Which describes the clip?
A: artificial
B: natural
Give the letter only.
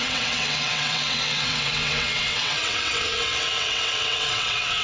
A